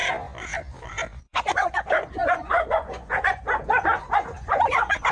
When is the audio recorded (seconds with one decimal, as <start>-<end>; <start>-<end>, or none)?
0.0-1.2